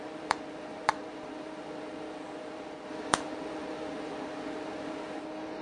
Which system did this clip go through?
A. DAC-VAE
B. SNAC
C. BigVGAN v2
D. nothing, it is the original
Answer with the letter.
C